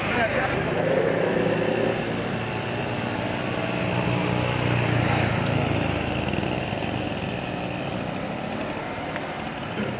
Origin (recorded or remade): recorded